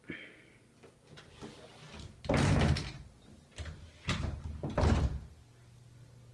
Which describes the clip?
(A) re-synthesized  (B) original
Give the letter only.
B